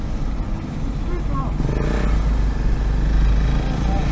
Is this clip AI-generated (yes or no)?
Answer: no